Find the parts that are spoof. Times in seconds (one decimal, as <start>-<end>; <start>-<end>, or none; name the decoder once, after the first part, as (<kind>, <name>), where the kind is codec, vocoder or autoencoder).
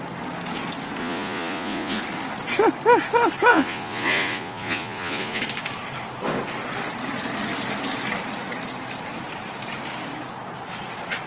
1.0-2.0 (vocoder, Vocos); 3.5-5.4